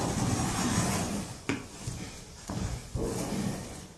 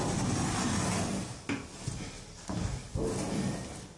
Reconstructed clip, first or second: first